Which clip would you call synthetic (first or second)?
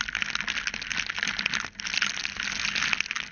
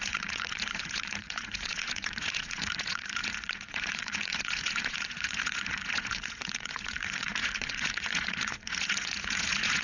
second